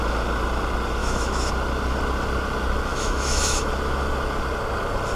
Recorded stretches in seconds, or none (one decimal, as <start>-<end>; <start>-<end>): 0.0-1.0; 1.5-2.9; 3.7-5.2